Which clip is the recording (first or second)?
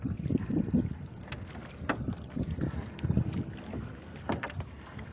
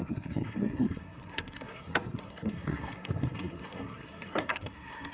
first